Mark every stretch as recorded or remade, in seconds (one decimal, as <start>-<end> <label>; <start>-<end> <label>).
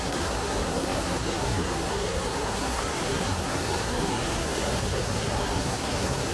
0.0-6.3 remade